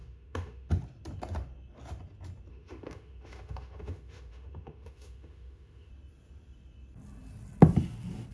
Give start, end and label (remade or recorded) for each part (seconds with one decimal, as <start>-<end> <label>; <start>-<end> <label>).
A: 0.0-0.7 remade; 0.7-2.5 recorded; 2.5-5.9 remade; 5.9-8.3 recorded